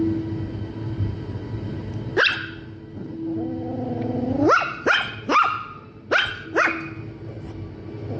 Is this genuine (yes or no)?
yes